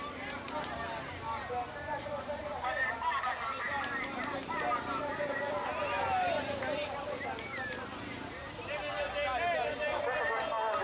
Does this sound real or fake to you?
real